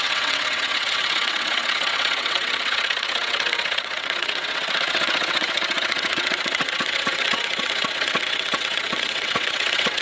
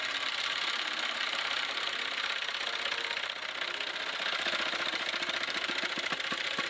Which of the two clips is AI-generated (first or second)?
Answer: first